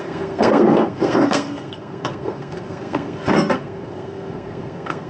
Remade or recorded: remade